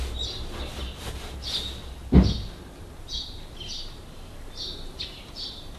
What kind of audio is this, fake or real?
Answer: real